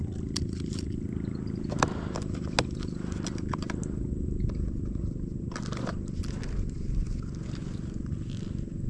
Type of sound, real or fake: real